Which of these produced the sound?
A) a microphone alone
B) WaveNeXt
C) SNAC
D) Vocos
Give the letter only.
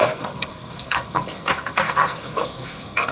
C